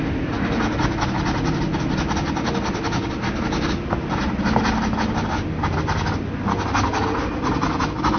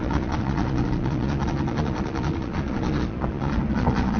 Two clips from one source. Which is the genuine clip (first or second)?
first